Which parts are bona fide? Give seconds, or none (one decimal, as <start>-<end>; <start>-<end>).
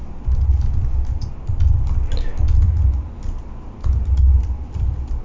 0.0-5.2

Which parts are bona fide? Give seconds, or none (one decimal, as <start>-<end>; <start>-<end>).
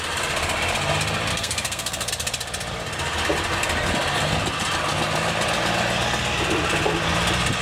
0.0-1.3; 2.1-7.6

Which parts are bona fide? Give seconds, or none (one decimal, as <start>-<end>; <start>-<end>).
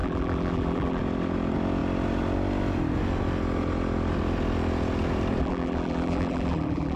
1.0-5.4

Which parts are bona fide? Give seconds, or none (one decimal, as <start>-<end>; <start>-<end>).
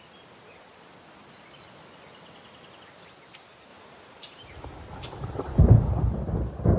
0.0-3.7; 5.6-6.8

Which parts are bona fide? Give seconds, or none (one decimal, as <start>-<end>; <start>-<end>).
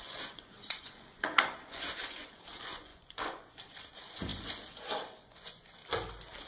5.8-6.5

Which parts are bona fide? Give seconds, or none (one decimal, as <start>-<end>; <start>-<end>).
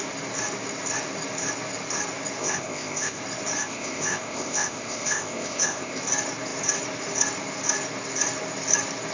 0.0-2.4; 3.2-3.6; 6.0-9.1